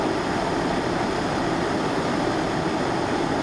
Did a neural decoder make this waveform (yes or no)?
no